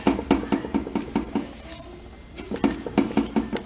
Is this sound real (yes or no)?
yes